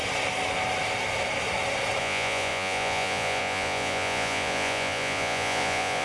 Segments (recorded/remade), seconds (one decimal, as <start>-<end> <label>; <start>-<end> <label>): 0.0-2.0 recorded; 2.0-6.0 remade